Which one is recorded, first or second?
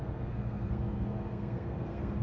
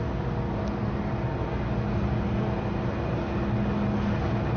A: second